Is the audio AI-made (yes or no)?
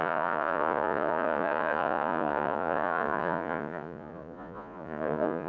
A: yes